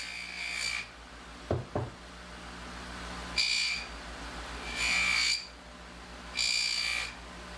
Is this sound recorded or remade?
recorded